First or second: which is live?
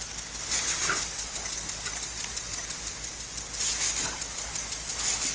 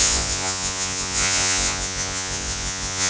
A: first